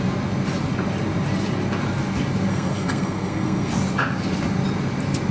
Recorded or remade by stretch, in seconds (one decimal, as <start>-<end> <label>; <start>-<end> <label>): 0.0-2.5 recorded; 2.5-3.7 remade; 3.7-5.3 recorded